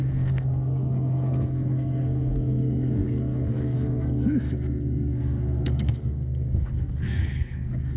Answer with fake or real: fake